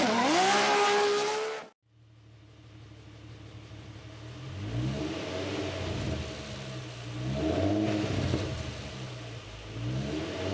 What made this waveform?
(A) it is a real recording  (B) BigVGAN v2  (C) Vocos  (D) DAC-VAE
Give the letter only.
A